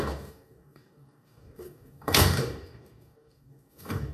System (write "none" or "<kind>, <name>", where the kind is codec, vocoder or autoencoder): codec, DAC